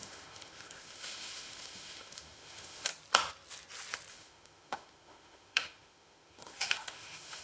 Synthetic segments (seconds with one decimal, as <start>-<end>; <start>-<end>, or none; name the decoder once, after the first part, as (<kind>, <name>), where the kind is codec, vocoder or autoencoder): 0.0-2.9 (autoencoder, DAC-VAE); 4.1-7.4